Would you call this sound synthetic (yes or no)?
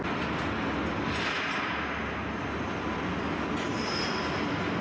no